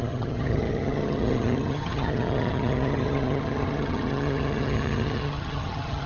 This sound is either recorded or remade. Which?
remade